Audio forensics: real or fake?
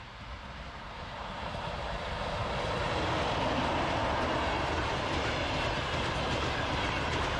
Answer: real